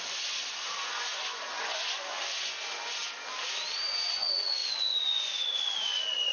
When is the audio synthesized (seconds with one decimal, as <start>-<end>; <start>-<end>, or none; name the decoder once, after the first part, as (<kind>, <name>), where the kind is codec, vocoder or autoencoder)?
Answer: 0.0-3.0 (vocoder, Vocos); 4.1-6.3